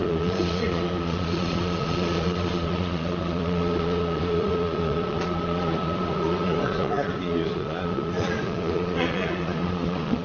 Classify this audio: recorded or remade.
remade